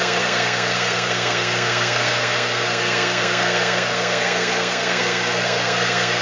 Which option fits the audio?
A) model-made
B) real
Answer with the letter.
A